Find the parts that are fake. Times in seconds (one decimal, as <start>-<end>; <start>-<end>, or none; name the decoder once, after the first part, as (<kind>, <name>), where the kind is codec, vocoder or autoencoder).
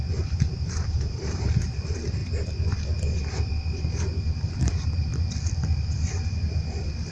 0.0-2.2 (vocoder, BigVGAN v2); 4.5-7.1